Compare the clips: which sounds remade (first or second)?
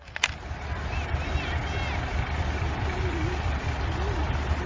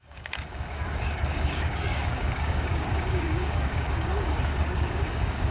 second